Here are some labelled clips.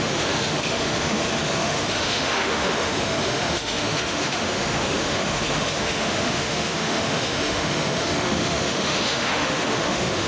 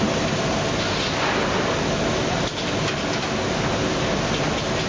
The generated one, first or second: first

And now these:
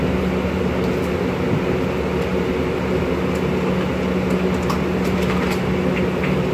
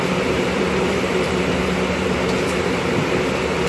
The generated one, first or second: second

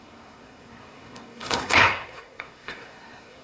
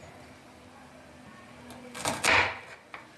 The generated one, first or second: first